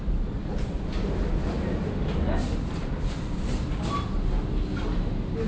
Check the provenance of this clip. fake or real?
real